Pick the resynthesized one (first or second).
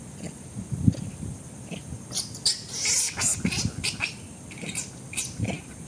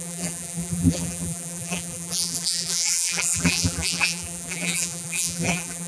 second